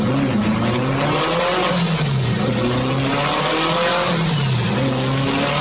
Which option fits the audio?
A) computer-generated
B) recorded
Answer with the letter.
B